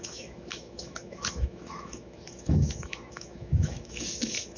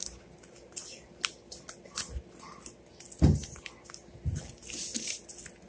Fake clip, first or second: first